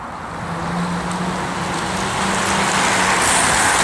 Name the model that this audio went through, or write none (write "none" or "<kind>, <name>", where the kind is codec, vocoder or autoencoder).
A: none